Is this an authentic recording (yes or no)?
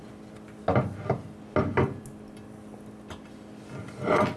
yes